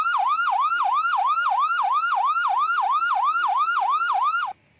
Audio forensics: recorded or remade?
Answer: recorded